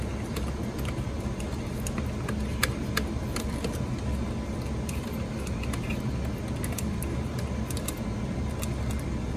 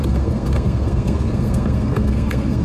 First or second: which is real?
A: first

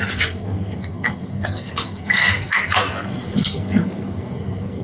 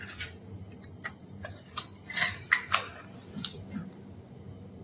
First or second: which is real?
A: second